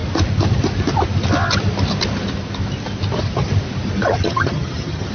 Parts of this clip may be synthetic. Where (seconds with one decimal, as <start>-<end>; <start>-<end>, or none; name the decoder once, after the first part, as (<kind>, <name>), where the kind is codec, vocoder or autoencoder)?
4.0-5.1 (vocoder, HiFi-GAN)